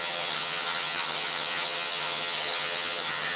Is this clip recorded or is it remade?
remade